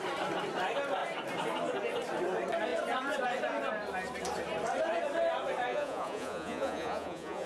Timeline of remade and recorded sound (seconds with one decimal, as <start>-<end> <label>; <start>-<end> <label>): 0.0-5.7 recorded; 5.7-7.5 remade